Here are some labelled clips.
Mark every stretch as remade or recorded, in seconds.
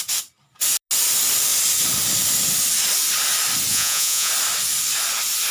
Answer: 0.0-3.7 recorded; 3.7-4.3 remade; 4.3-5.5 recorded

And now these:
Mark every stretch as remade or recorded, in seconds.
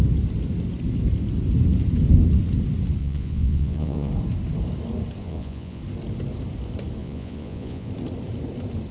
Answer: 0.0-3.0 recorded; 3.0-4.1 remade; 4.1-5.2 recorded; 5.2-5.8 remade; 5.8-7.0 recorded; 7.0-7.9 remade; 7.9-8.9 recorded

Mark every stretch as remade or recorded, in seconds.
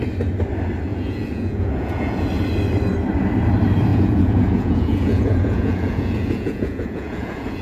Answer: 0.0-0.9 recorded; 0.9-2.3 remade; 2.3-3.9 recorded; 3.9-7.6 remade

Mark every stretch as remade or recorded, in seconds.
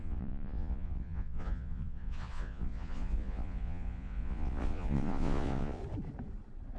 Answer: 0.0-5.8 remade; 5.8-6.8 recorded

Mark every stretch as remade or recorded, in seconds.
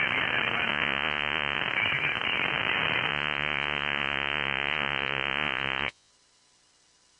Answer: 0.0-0.7 recorded; 0.7-1.6 remade; 1.6-3.1 recorded; 3.1-6.1 remade; 6.1-7.2 recorded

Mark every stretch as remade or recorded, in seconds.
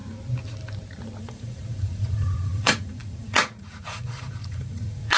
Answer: 0.0-1.2 recorded; 1.2-5.2 remade